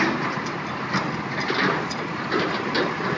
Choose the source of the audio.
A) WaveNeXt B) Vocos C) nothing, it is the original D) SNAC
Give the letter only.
C